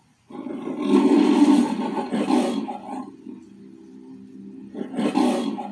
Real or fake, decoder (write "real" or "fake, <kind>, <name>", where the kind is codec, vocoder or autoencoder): real